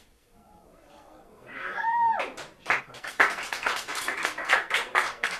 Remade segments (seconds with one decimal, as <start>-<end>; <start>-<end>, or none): 0.0-2.1; 2.8-5.4